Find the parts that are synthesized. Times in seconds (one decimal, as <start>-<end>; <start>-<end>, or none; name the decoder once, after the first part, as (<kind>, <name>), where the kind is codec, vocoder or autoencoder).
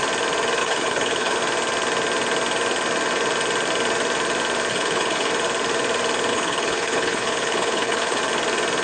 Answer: 0.6-1.4 (codec, HILCodec); 4.7-5.3; 6.3-8.2